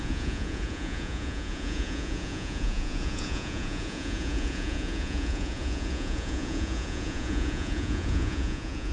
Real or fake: fake